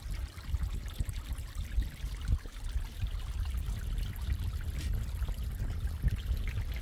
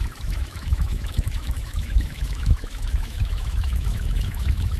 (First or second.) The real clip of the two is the first